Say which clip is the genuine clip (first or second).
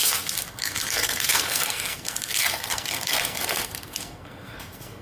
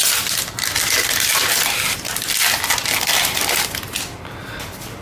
second